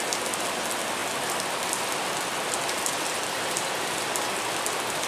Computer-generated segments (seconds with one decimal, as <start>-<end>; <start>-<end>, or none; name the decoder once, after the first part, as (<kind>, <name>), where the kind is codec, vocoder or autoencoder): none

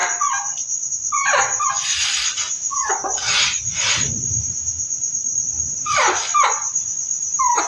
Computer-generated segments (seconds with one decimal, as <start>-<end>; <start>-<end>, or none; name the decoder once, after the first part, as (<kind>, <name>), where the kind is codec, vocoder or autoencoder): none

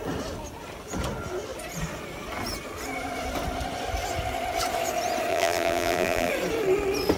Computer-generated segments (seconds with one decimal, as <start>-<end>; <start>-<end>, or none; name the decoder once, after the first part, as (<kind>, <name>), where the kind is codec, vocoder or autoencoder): 5.3-6.3 (vocoder, BigVGAN v2)

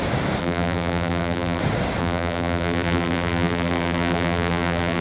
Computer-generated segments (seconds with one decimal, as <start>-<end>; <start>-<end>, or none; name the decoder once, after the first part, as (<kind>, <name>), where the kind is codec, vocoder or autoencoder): 0.4-1.6 (vocoder, BigVGAN v2); 2.0-5.0